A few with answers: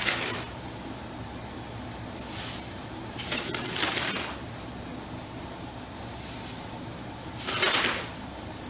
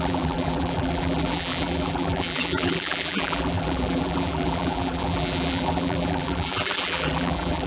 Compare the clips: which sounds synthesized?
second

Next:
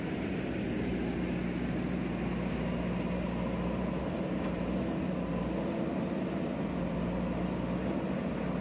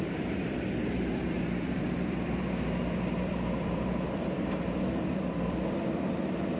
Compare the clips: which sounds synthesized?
second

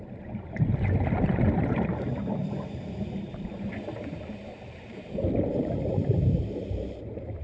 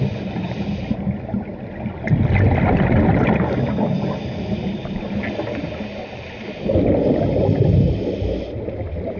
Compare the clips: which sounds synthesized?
first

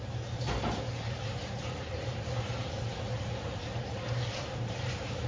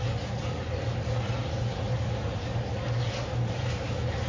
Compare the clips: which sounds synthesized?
first